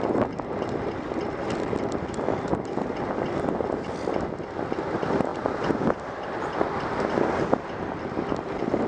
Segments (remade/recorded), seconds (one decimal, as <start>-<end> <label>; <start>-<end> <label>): 0.0-8.9 recorded